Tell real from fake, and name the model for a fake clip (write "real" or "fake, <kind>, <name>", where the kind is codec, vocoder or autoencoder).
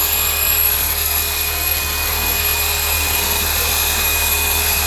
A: fake, codec, SNAC